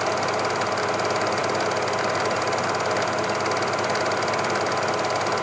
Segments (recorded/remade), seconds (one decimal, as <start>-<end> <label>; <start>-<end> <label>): 0.0-5.4 recorded